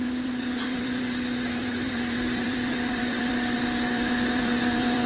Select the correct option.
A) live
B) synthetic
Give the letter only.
B